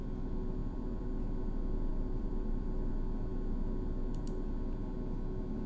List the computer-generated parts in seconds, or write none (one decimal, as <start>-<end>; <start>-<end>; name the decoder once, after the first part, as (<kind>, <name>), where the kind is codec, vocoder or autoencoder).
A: 0.6-1.4 (vocoder, BigVGAN v2); 1.9-2.9